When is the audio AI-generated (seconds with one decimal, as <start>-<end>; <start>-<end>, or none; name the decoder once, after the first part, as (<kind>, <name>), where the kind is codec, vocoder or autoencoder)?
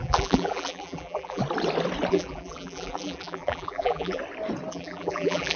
0.0-1.4 (vocoder, BigVGAN v2); 2.1-4.2; 4.7-5.6